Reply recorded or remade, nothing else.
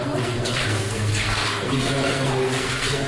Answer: remade